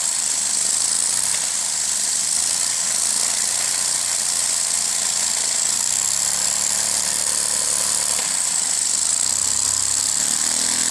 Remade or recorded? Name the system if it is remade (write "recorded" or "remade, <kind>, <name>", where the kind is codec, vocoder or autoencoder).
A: recorded